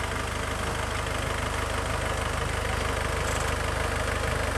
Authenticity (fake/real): real